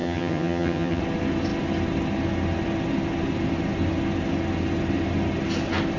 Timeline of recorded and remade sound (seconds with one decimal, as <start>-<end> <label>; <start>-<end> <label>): 0.0-1.0 remade; 1.0-6.0 recorded